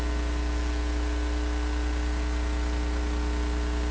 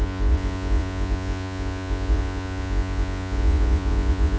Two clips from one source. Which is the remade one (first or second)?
second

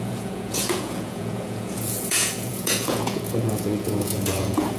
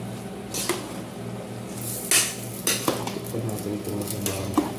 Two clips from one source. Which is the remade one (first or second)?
first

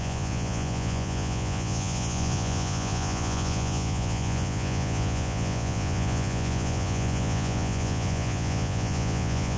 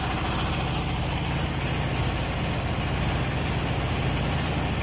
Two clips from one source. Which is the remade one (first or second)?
first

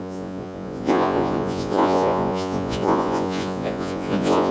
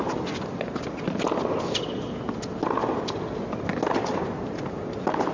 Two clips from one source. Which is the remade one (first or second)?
first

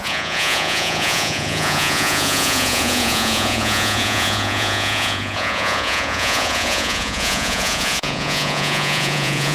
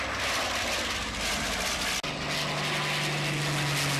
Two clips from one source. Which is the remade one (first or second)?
first